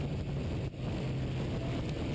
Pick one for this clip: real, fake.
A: real